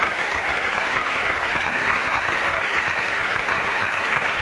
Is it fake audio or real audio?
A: fake